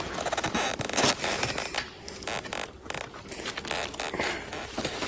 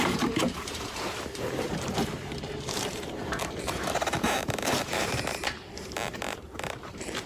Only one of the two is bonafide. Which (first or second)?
first